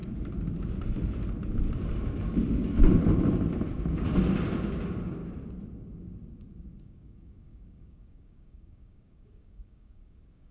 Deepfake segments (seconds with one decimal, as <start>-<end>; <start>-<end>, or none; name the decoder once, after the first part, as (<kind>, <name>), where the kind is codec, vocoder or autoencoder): 4.5-5.2 (codec, DAC); 6.8-10.5